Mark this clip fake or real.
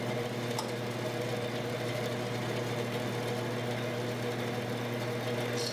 real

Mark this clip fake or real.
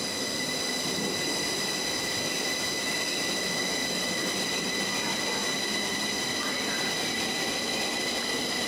real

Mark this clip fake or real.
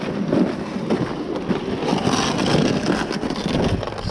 real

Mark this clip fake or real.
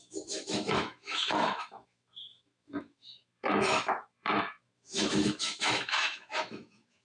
fake